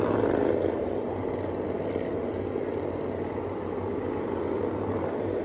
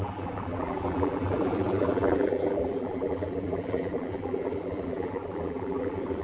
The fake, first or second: second